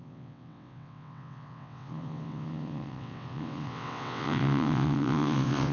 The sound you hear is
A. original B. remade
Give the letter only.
B